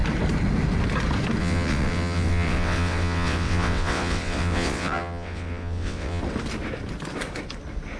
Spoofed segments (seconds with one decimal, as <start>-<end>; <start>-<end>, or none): 1.4-6.2